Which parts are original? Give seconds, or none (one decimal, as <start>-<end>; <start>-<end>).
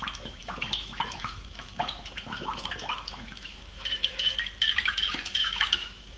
4.3-4.9